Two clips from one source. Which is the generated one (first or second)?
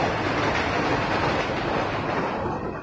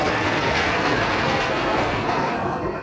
second